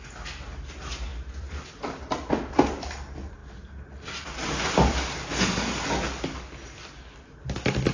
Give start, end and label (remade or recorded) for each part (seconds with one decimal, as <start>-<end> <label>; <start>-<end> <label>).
0.0-1.1 recorded; 1.1-2.3 remade; 2.3-7.9 recorded